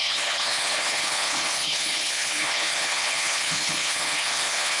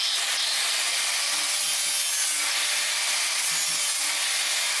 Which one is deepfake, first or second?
first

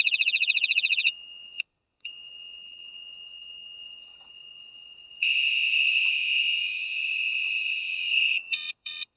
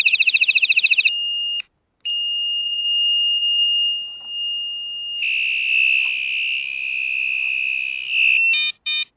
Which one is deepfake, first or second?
first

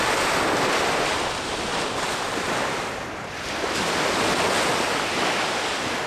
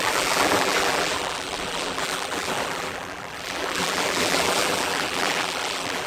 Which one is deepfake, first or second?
second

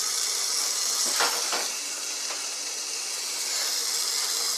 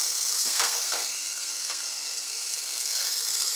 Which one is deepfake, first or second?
second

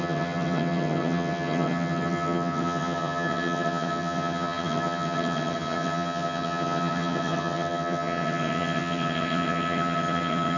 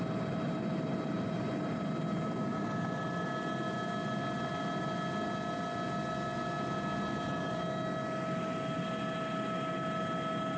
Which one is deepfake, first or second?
first